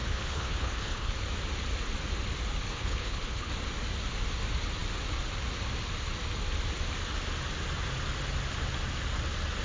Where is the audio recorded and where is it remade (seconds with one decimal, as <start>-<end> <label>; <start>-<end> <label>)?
0.0-1.1 remade; 1.1-2.7 recorded; 2.7-3.5 remade; 3.5-9.6 recorded